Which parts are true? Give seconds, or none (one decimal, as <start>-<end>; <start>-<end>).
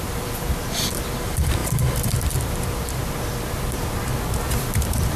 none